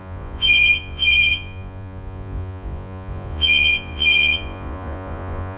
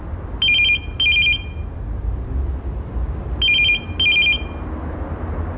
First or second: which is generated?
first